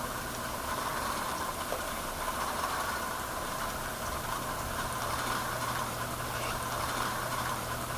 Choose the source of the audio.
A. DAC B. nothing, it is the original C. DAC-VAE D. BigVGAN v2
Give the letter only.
D